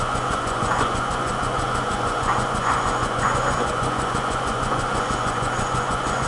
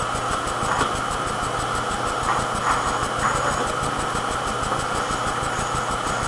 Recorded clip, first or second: second